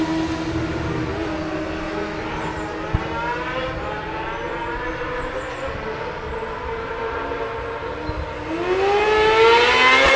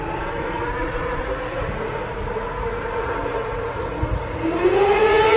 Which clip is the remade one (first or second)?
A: second